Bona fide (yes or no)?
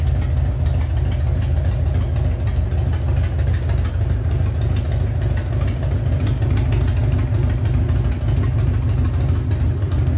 yes